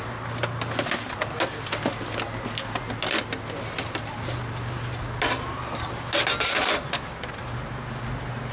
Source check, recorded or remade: recorded